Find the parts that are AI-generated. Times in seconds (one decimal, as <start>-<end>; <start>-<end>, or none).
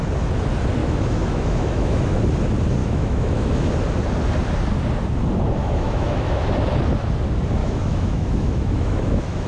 0.8-2.2; 2.8-3.7; 5.6-6.4; 7.6-9.5